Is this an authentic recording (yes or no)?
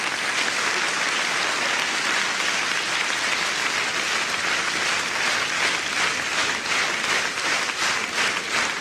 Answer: yes